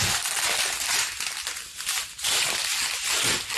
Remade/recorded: recorded